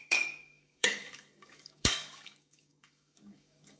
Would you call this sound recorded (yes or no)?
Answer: no